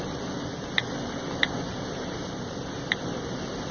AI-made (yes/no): no